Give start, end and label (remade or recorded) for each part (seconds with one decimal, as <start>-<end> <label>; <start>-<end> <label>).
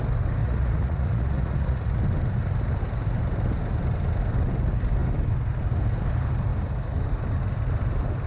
0.0-0.4 recorded; 0.4-2.0 remade; 2.0-8.3 recorded